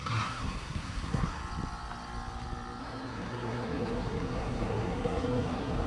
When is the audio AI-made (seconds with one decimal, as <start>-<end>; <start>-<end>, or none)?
0.0-1.4; 2.8-5.9